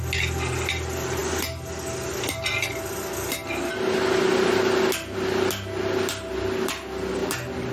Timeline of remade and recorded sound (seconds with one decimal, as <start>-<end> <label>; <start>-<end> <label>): 0.0-7.7 recorded